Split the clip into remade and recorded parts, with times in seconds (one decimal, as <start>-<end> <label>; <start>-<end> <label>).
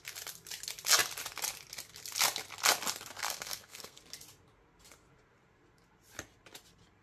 0.0-3.2 recorded; 3.2-4.0 remade; 4.0-7.0 recorded